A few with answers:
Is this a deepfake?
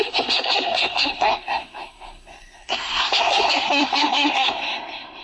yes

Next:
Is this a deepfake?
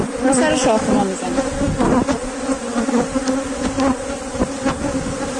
no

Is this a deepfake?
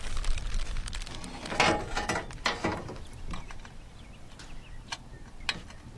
no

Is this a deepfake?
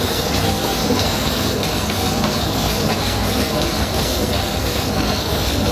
yes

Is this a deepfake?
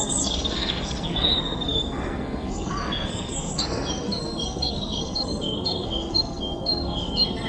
yes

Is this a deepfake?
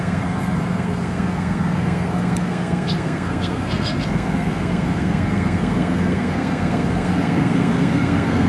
yes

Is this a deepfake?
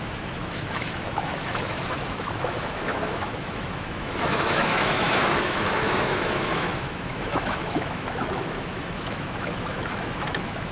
yes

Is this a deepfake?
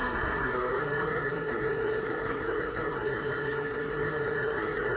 yes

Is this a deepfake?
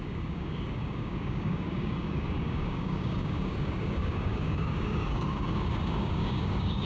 yes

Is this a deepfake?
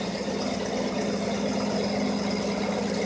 no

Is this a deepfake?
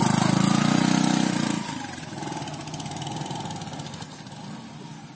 no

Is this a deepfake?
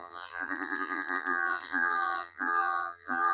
yes